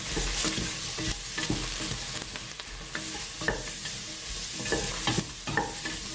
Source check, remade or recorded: recorded